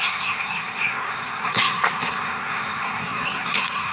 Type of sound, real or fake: fake